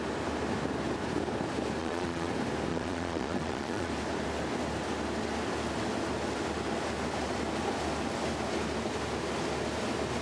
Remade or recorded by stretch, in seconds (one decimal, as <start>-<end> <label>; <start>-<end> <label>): 0.0-1.8 recorded; 1.8-2.3 remade; 2.3-2.7 recorded; 2.7-3.9 remade; 3.9-10.2 recorded